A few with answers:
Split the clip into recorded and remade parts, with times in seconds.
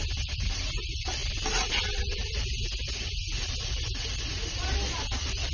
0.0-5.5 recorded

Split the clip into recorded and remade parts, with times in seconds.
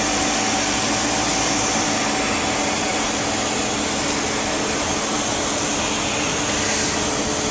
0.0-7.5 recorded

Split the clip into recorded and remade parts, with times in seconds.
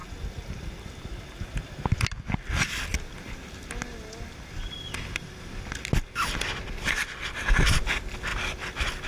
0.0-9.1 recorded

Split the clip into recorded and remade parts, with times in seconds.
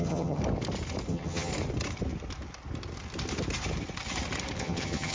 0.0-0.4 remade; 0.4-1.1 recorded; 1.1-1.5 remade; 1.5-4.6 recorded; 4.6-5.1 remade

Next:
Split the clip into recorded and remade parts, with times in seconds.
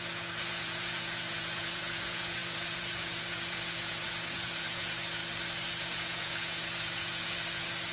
0.0-5.2 remade; 5.2-5.8 recorded; 5.8-7.9 remade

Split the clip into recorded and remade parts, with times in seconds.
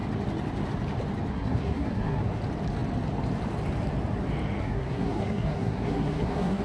0.0-1.3 recorded; 1.3-2.4 remade; 2.4-4.6 recorded; 4.6-6.6 remade